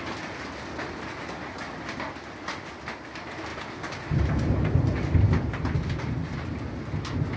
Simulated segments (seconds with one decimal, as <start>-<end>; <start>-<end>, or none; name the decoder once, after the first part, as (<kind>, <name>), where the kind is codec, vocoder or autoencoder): none